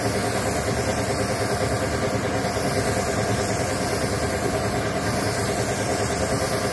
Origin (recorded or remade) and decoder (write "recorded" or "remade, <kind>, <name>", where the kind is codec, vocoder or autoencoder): recorded